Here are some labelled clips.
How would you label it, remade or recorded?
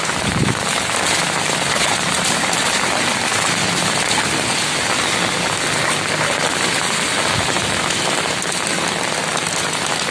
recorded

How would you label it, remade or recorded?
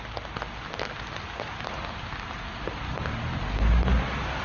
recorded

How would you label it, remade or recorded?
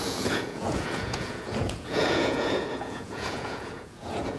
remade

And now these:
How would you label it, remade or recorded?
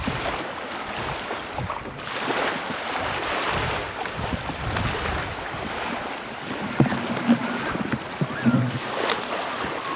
recorded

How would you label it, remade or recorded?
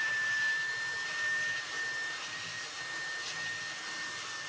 recorded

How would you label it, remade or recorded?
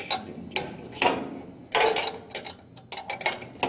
recorded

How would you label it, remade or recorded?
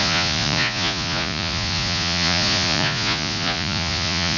remade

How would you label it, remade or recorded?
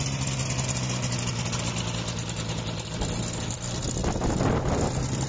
recorded